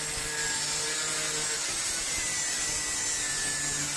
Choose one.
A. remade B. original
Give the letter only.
B